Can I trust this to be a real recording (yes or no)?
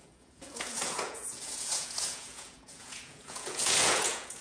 no